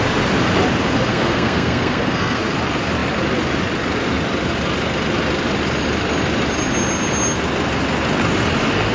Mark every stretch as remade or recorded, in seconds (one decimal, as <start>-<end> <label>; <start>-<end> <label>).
0.0-1.1 recorded; 1.1-2.4 remade; 2.4-8.9 recorded